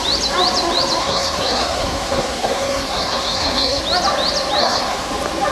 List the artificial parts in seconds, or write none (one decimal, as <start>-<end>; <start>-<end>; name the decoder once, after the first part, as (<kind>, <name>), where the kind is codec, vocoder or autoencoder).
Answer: 1.0-3.8 (codec, SNAC); 4.6-5.1